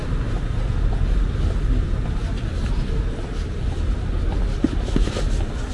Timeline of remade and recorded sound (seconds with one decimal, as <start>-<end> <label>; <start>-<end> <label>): 0.0-5.7 recorded